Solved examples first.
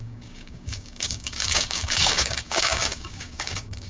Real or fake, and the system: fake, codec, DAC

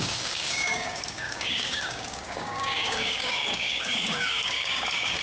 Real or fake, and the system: fake, codec, DAC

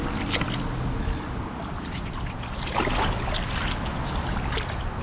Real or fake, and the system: real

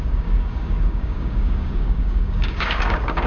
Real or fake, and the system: fake, codec, DAC